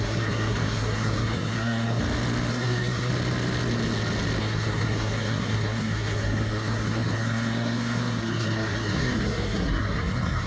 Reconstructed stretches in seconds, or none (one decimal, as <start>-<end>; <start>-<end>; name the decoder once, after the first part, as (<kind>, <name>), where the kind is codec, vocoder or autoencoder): 0.0-2.0 (codec, SNAC); 2.5-3.1; 4.4-10.5